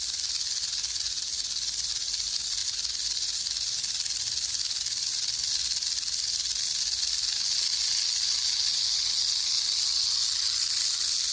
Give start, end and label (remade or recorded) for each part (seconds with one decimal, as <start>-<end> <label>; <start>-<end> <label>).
0.0-11.3 recorded